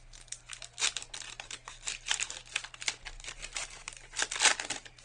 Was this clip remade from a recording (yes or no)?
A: no